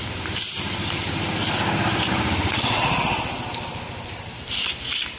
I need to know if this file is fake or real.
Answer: real